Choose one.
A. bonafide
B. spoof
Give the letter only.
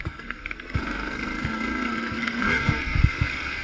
B